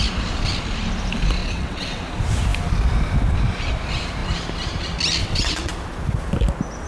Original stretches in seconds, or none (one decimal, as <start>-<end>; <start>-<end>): 0.0-1.4; 2.0-5.2; 5.7-6.9